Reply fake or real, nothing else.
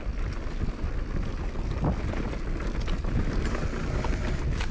real